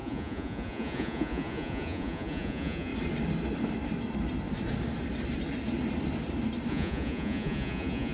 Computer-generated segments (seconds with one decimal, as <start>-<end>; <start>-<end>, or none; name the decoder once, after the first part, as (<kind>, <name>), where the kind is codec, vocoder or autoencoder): 0.0-2.9 (vocoder, Vocos); 6.7-8.1